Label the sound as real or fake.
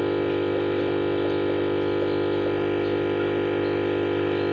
real